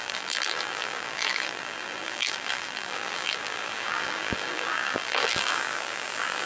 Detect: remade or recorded remade